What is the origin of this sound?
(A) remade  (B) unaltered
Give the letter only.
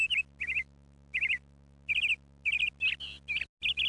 B